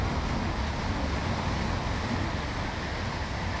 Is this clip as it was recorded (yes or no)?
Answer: yes